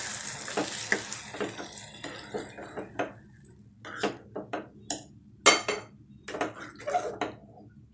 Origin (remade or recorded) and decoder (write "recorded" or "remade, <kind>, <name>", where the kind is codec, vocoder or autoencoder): recorded